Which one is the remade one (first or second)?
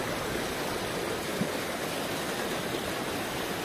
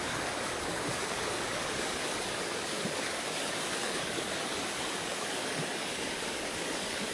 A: second